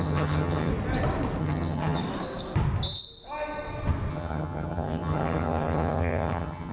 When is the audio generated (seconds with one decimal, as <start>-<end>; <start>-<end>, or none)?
0.0-0.7; 1.4-2.0; 4.1-6.7